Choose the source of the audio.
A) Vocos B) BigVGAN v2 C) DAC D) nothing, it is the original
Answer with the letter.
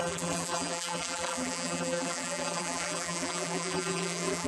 B